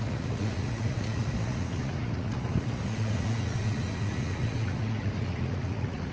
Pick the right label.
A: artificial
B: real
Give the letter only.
A